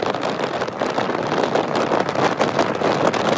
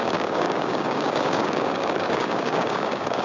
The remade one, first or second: second